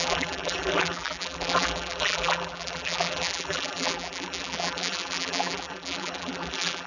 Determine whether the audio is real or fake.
fake